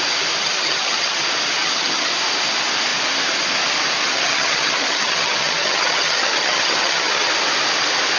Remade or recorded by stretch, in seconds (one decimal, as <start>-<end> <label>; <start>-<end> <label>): 0.0-0.4 recorded; 0.4-1.2 remade; 1.2-1.6 recorded; 1.6-2.1 remade; 2.1-4.0 recorded; 4.0-7.3 remade; 7.3-8.2 recorded